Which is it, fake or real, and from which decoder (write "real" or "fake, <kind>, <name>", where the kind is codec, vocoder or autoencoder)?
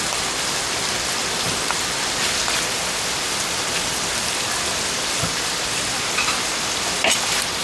fake, vocoder, BigVGAN v2